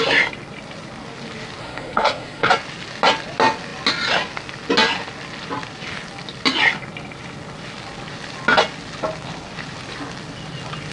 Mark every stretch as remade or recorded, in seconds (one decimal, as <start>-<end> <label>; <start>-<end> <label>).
0.0-1.6 recorded; 1.6-2.5 remade; 2.5-10.9 recorded